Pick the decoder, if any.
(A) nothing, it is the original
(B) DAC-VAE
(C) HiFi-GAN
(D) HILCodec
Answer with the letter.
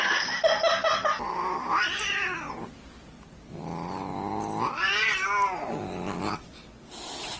A